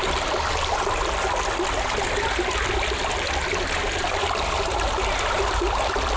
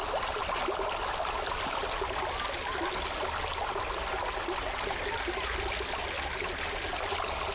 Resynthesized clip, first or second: first